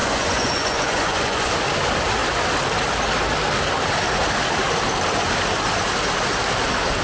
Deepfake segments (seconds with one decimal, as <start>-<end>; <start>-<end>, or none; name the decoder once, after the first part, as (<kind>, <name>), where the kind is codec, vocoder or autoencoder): 0.0-1.5 (vocoder, Vocos)